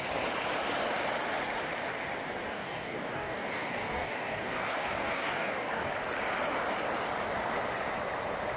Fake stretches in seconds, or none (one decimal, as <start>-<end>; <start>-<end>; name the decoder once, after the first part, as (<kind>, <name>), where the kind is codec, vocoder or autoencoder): 2.5-5.9 (codec, DAC)